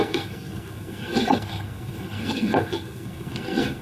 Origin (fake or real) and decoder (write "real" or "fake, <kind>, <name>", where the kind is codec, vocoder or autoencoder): fake, codec, SNAC